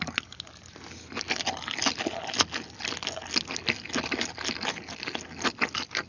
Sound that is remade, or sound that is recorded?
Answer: recorded